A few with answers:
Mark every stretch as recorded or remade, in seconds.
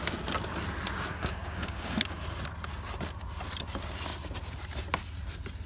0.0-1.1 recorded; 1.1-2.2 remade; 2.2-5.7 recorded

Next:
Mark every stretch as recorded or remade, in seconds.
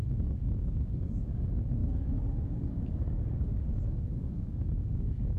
0.0-5.4 remade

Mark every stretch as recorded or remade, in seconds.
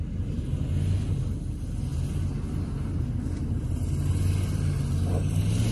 0.0-5.7 recorded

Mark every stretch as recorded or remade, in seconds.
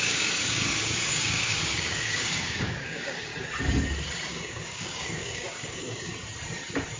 0.0-3.3 remade; 3.3-4.3 recorded; 4.3-6.1 remade; 6.1-7.0 recorded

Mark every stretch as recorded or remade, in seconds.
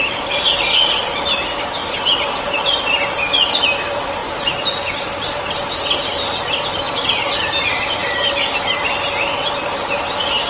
0.0-10.5 recorded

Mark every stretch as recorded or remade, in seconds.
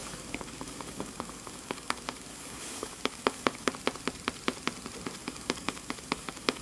0.0-3.7 remade; 3.7-5.2 recorded; 5.2-6.6 remade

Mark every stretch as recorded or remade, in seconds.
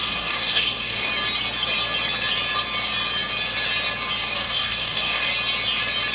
0.0-1.1 remade; 1.1-4.2 recorded; 4.2-5.3 remade; 5.3-6.1 recorded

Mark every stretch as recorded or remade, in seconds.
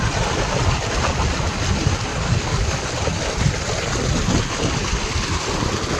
0.0-2.1 recorded; 2.1-2.8 remade; 2.8-6.0 recorded